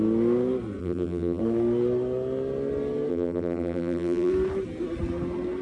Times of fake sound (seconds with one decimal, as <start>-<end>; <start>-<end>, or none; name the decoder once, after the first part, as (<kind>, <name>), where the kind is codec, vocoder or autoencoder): 0.8-1.4 (vocoder, BigVGAN v2); 3.1-4.3